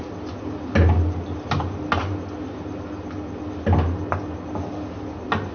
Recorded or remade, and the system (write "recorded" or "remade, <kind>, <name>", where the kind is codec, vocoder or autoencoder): recorded